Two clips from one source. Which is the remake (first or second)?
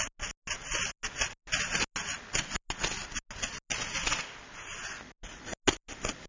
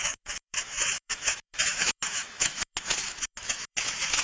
second